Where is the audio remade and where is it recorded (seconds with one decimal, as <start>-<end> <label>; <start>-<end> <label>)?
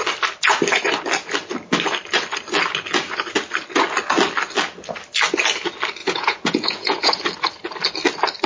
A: 0.0-6.0 recorded; 6.0-7.2 remade; 7.2-8.5 recorded